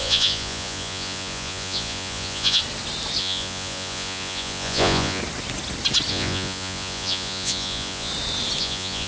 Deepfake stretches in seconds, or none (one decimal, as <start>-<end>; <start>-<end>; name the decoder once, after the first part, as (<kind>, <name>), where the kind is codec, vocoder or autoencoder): 0.0-2.6 (vocoder, Vocos); 3.2-5.2; 6.1-8.1; 8.6-9.1